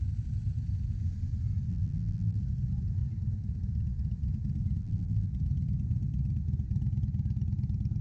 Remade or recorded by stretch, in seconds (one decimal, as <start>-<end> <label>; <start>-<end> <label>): 0.0-1.7 recorded; 1.7-2.4 remade; 2.4-4.8 recorded; 4.8-5.3 remade; 5.3-8.0 recorded